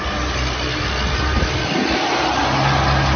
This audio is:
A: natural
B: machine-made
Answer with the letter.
A